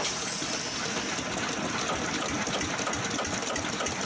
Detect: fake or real real